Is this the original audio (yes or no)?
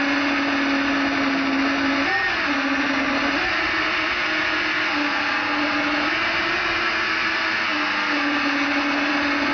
yes